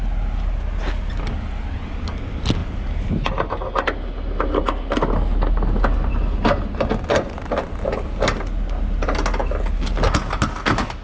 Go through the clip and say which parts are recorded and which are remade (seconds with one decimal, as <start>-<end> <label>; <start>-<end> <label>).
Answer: 0.0-11.0 recorded